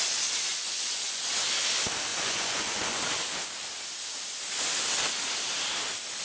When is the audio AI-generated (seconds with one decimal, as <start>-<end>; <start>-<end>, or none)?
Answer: 0.5-1.2; 2.1-3.0